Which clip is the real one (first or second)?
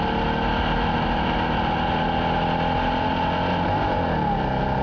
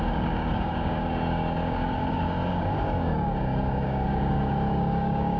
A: first